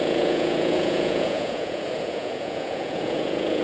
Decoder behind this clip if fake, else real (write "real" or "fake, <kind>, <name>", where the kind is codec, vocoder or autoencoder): fake, vocoder, Vocos